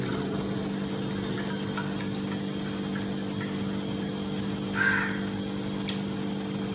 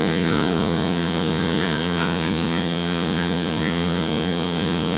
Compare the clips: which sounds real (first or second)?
first